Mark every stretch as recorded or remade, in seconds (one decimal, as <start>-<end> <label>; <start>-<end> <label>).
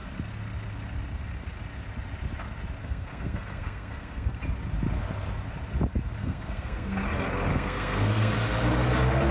0.0-2.8 recorded; 2.8-4.4 remade; 4.4-6.2 recorded; 6.2-7.0 remade; 7.0-7.5 recorded; 7.5-8.3 remade; 8.3-9.3 recorded